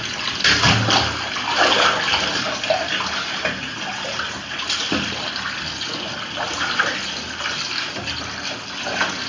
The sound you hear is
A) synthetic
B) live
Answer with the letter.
B